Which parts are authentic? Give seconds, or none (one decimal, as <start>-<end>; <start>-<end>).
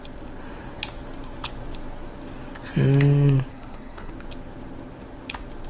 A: 0.0-3.5; 4.1-5.7